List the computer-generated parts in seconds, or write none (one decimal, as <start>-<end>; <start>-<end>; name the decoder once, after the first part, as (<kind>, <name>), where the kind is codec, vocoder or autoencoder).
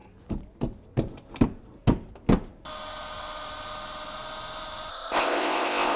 4.9-6.0 (codec, ZipCodec)